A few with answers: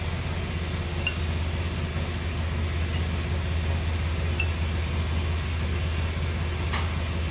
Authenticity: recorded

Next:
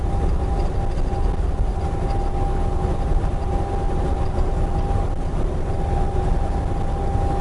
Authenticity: recorded